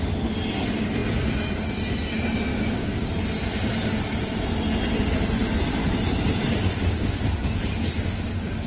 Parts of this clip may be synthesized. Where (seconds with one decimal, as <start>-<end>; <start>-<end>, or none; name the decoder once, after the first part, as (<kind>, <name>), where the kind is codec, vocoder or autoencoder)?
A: 2.5-3.1 (codec, DAC)